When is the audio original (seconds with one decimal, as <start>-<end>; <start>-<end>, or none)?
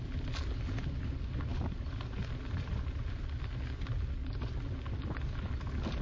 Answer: 0.0-1.5; 3.2-6.0